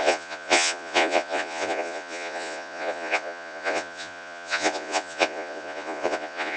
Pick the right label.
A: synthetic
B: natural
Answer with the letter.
A